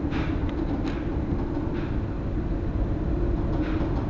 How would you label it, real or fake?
real